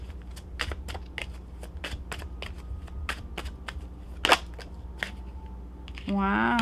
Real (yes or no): yes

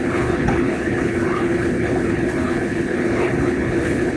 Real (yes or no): no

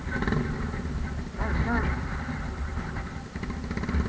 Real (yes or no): yes